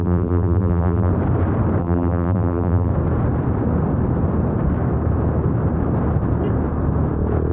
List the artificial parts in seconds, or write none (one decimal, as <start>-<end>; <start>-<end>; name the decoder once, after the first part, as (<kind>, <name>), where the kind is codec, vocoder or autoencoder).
0.0-1.1 (vocoder, BigVGAN v2); 1.8-2.9